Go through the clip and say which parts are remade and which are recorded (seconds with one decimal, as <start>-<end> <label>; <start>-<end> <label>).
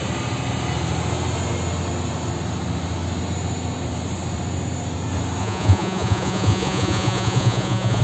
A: 0.0-5.4 recorded; 5.4-8.0 remade